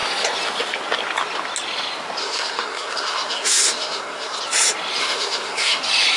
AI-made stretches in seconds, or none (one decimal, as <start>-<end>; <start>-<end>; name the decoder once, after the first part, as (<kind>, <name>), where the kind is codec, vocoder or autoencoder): 2.2-4.4 (codec, SNAC); 5.0-5.8